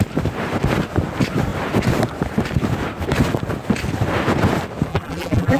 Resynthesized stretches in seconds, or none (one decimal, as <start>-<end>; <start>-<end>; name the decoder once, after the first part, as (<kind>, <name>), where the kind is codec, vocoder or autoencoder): 4.9-5.6 (vocoder, BigVGAN v2)